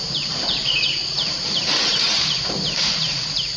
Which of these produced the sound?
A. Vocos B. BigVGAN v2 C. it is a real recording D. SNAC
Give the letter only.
B